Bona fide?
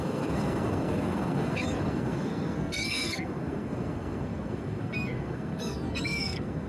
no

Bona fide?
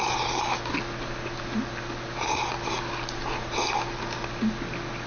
yes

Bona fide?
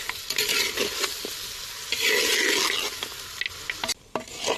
yes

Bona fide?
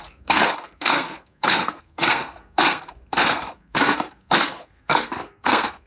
no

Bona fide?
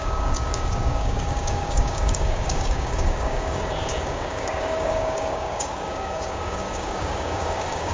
no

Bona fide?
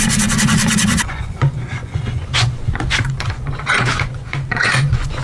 no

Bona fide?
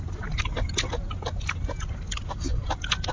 yes